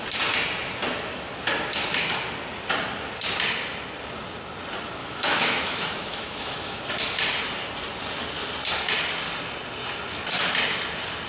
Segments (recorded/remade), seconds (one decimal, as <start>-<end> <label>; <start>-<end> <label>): 0.0-5.0 recorded; 5.0-6.8 remade; 6.8-11.3 recorded